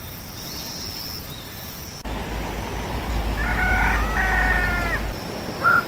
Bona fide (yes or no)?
yes